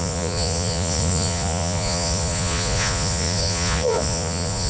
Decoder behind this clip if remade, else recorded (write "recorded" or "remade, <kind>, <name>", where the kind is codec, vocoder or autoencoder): remade, vocoder, Vocos